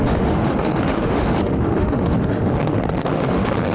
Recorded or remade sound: remade